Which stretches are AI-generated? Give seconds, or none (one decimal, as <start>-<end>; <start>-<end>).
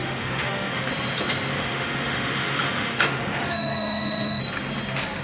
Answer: 0.0-0.9; 1.5-4.4